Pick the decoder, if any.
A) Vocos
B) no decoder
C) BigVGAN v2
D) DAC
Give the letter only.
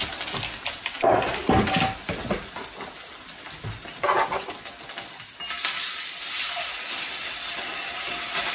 B